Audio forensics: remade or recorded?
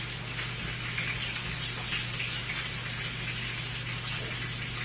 recorded